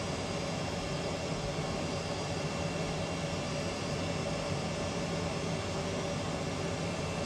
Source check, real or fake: real